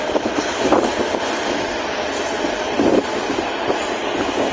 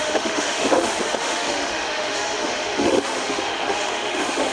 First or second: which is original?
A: first